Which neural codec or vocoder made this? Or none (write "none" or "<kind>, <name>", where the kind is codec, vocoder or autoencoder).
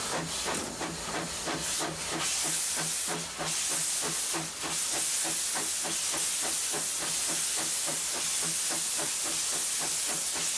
none